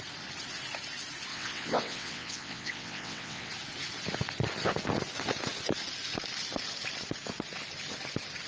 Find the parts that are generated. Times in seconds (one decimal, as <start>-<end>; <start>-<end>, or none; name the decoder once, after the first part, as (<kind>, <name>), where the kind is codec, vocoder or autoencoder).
1.3-3.5 (vocoder, WaveNeXt)